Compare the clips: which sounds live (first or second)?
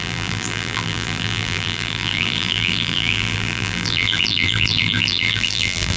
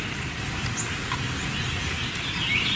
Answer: second